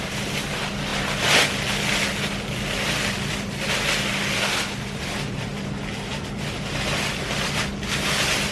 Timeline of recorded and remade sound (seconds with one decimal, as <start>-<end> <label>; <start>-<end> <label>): 0.0-8.5 recorded